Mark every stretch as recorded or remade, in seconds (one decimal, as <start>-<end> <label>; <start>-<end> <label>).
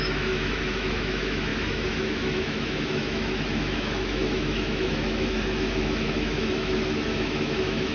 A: 0.0-7.9 remade